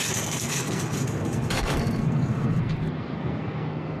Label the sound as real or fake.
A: fake